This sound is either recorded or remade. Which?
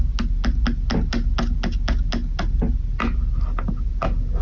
recorded